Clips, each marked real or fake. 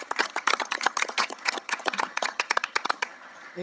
fake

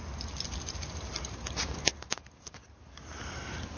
real